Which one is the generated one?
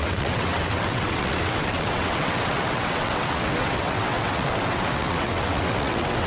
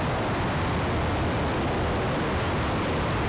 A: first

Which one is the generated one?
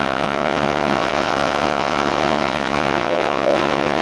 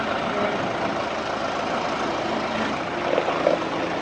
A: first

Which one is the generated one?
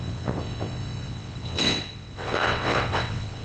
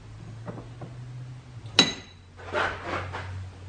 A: first